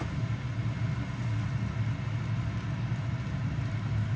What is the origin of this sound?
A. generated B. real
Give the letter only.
B